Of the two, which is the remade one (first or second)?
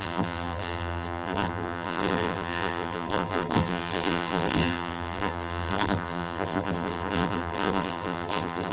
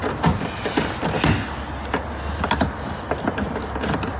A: first